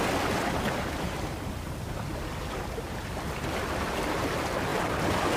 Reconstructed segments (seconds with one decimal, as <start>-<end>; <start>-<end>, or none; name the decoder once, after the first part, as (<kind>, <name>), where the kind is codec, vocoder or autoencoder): none